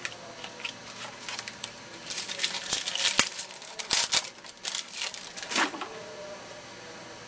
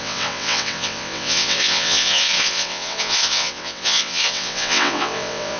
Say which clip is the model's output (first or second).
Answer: second